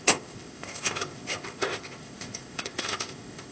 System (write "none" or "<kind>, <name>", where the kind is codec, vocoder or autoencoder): codec, ZipCodec